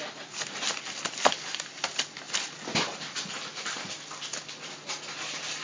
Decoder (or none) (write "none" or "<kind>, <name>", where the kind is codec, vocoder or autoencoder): none